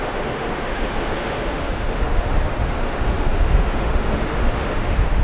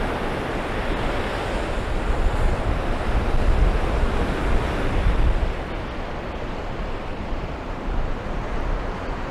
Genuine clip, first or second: second